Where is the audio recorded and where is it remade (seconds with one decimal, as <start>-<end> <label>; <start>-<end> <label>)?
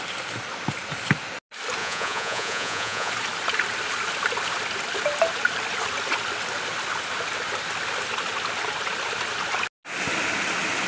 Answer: 0.0-1.8 recorded; 1.8-3.1 remade; 3.1-10.9 recorded